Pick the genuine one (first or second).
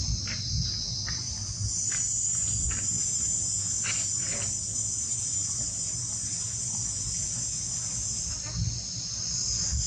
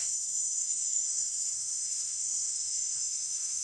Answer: first